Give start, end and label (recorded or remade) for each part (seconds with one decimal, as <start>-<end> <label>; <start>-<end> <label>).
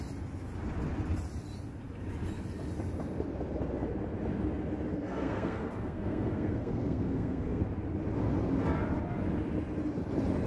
0.0-4.9 recorded; 4.9-7.6 remade; 7.6-10.5 recorded